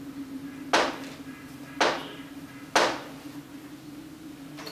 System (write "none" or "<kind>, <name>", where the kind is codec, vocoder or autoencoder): none